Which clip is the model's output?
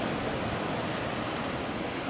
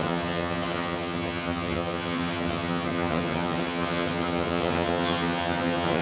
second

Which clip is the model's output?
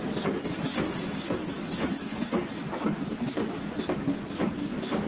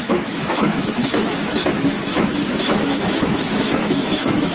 second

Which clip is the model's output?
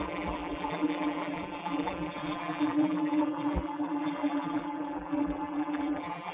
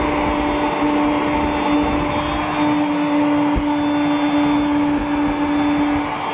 first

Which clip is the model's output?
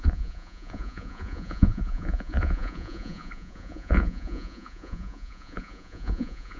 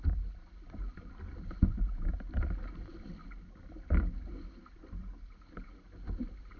first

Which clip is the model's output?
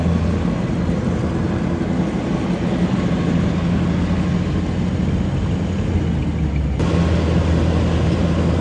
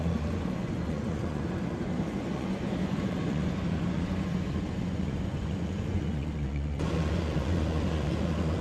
second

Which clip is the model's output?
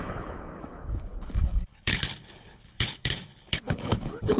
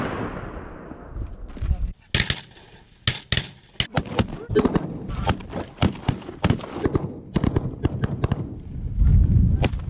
first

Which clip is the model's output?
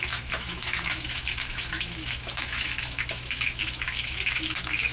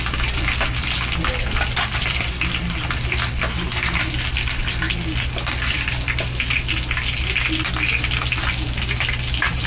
first